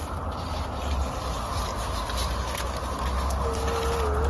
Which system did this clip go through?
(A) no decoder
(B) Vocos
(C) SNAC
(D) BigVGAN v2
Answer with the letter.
A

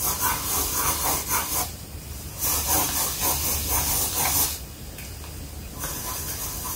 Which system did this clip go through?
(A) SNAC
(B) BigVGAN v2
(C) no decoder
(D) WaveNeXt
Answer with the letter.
C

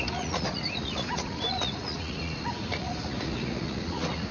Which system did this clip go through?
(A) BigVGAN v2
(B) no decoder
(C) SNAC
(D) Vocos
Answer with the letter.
D